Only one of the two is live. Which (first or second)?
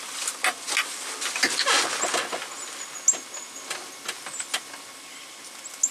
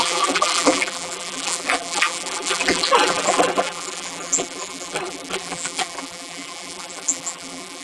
first